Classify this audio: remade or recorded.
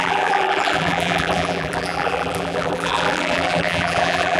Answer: remade